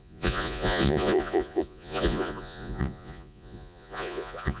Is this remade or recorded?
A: remade